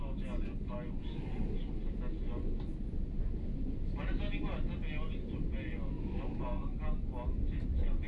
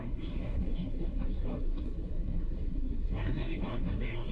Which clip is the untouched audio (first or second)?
first